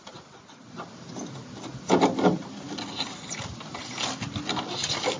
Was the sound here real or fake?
real